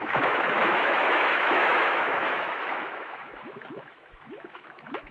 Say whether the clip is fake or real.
fake